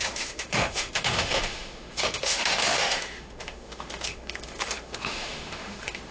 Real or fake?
fake